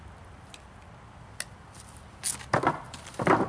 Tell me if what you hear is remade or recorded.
recorded